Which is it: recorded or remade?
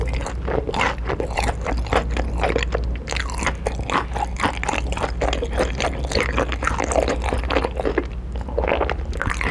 recorded